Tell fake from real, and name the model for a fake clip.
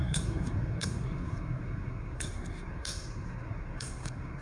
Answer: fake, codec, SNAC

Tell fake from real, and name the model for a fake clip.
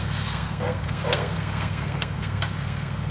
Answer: fake, codec, SNAC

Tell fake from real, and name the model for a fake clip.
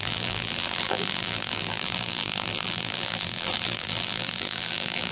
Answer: fake, vocoder, BigVGAN v2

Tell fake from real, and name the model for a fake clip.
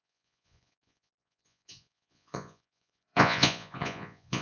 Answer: fake, vocoder, Vocos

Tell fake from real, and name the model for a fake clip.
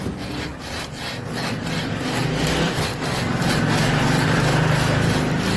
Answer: real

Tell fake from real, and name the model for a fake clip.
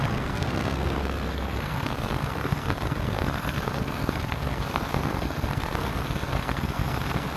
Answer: fake, codec, SNAC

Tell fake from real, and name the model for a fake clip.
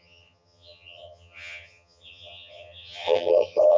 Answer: fake, vocoder, HiFi-GAN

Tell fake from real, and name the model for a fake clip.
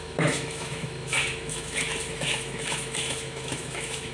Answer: fake, autoencoder, DAC-VAE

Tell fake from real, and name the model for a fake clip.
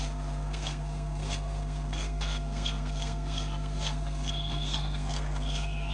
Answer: fake, codec, SNAC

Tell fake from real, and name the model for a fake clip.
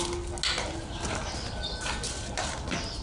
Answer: real